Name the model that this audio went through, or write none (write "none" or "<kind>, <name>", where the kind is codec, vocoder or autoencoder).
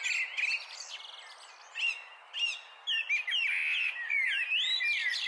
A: none